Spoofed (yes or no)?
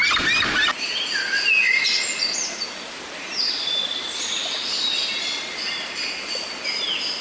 no